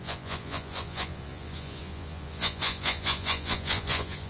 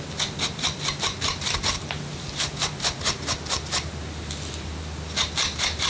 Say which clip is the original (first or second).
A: second